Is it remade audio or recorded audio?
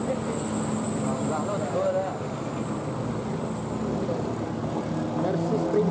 recorded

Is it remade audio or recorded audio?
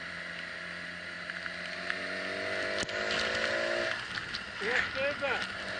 recorded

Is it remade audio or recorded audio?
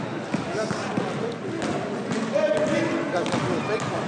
recorded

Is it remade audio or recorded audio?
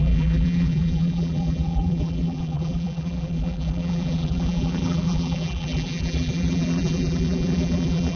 remade